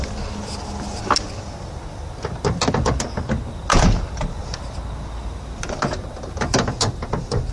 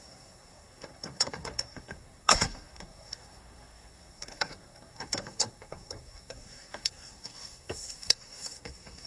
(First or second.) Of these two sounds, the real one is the first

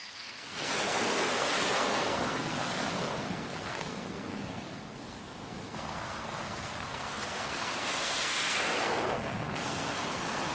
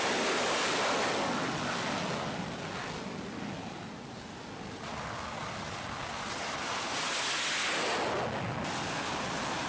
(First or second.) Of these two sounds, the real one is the second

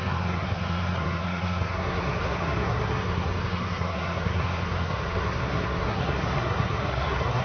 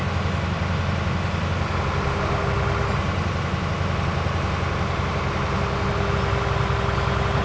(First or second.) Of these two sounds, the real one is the second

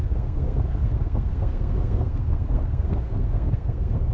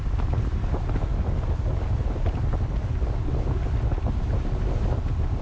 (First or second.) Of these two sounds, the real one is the second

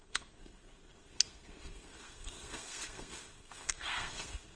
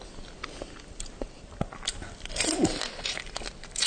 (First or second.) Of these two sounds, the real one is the second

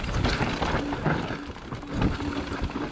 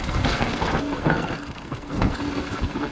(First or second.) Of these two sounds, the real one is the first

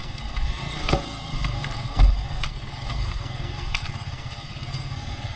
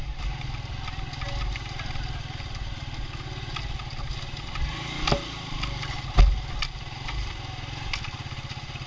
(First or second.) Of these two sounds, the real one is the second